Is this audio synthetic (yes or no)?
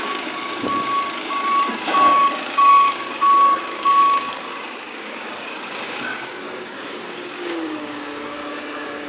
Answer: yes